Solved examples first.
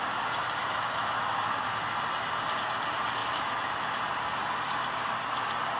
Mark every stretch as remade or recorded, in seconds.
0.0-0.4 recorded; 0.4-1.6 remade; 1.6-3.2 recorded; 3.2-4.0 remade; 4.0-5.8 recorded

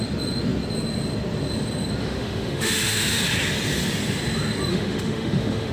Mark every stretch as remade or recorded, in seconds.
0.0-2.0 recorded; 2.0-3.2 remade; 3.2-4.7 recorded; 4.7-5.7 remade

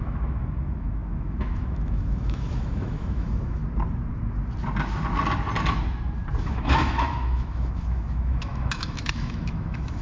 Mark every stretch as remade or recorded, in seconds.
0.0-3.6 remade; 3.6-6.4 recorded; 6.4-10.0 remade

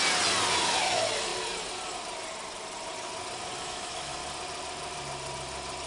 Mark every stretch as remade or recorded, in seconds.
0.0-0.6 recorded; 0.6-1.3 remade; 1.3-3.6 recorded; 3.6-4.2 remade; 4.2-5.9 recorded